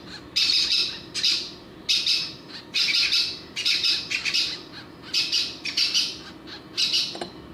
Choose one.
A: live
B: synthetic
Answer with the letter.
A